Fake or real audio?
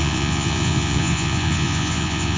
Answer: fake